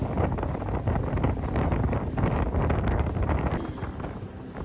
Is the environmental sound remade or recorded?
recorded